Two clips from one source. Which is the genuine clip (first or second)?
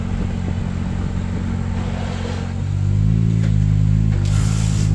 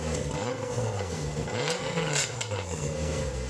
first